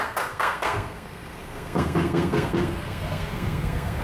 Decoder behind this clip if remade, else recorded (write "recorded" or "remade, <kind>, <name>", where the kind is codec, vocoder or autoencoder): remade, codec, SNAC